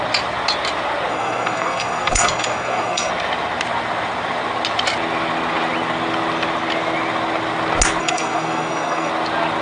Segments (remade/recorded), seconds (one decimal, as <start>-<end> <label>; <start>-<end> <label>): 0.0-1.1 recorded; 1.1-3.1 remade; 3.1-8.0 recorded; 8.0-9.1 remade; 9.1-9.6 recorded